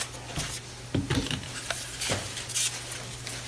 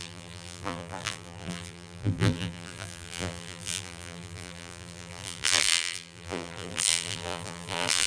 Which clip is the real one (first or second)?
first